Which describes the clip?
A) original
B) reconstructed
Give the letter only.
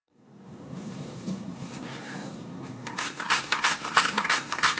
B